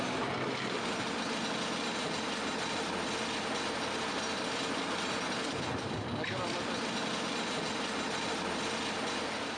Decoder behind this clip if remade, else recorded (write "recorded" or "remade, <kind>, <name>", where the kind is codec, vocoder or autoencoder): recorded